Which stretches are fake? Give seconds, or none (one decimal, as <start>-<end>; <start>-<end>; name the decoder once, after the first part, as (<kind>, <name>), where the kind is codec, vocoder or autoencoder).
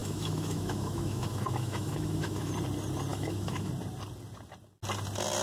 0.0-2.5 (autoencoder, DAC-VAE); 3.1-3.7